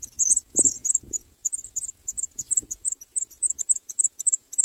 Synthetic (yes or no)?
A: yes